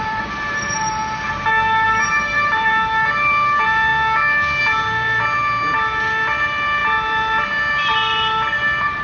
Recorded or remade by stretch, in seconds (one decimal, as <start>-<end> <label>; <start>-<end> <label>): 0.0-1.0 remade; 1.0-2.1 recorded; 2.1-3.9 remade; 3.9-4.6 recorded; 4.6-9.0 remade